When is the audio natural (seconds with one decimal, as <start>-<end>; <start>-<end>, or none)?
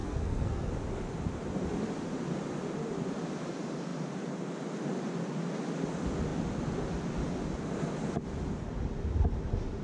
0.7-9.8